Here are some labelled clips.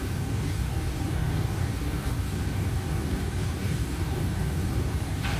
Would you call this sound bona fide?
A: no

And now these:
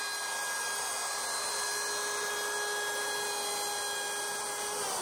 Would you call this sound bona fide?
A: yes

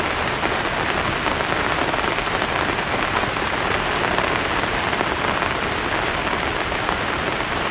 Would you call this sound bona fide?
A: yes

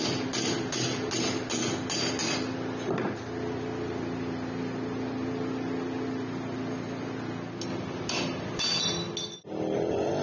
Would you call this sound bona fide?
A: yes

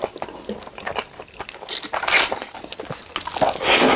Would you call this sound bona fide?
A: yes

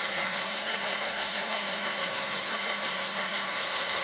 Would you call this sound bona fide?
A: no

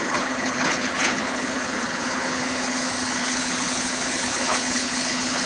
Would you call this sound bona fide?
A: no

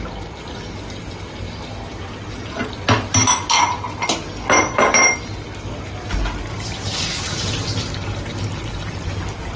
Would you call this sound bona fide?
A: yes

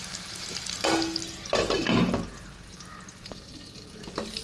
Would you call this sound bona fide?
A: yes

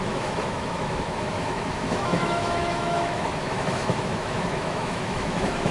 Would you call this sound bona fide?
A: no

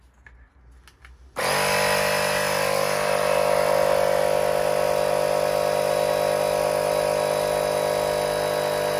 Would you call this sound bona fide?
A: yes